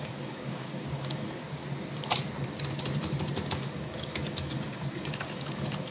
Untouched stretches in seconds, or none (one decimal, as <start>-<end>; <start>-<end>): 1.6-3.5